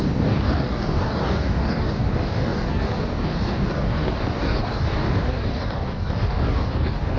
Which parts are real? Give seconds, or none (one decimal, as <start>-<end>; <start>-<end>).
none

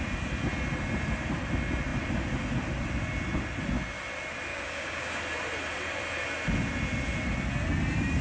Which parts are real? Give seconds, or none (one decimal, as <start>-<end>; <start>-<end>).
0.0-4.5; 5.2-8.2

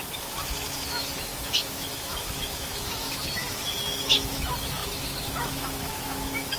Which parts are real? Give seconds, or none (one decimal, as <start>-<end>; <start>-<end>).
none

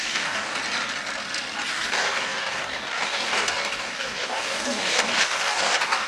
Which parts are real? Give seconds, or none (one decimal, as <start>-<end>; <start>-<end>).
0.6-1.7